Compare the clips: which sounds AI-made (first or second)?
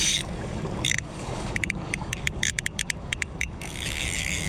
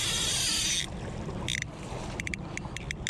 first